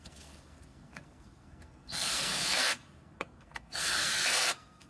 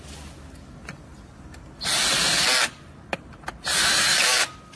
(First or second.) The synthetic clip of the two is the first